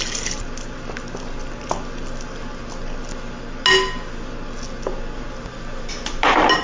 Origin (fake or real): real